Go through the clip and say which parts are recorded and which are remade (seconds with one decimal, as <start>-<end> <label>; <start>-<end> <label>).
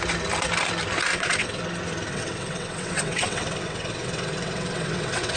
0.0-1.1 recorded; 1.1-1.6 remade; 1.6-2.1 recorded; 2.1-5.4 remade